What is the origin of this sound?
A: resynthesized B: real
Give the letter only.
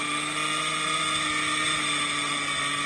B